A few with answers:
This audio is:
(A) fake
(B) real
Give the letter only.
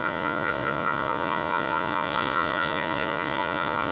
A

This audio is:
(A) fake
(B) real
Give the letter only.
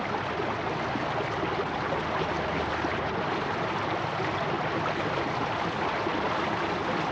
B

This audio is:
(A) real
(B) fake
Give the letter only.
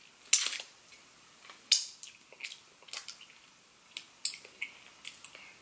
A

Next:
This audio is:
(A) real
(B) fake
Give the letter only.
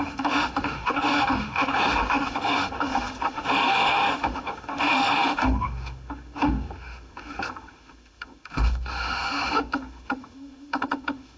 B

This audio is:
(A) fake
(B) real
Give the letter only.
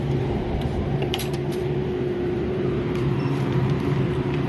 A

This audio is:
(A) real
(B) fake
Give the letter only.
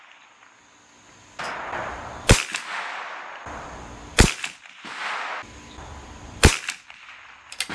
A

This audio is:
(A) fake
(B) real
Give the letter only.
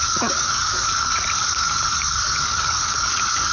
A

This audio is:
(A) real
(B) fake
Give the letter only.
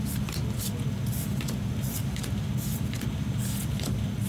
A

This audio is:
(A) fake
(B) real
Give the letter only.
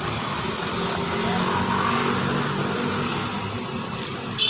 B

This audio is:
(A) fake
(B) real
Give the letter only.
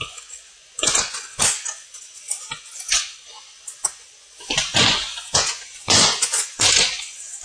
A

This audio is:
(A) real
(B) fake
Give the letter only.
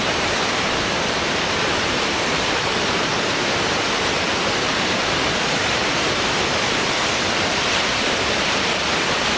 B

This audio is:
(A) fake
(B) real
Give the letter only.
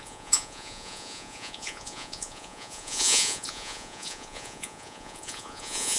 A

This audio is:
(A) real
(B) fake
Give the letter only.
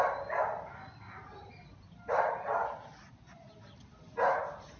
A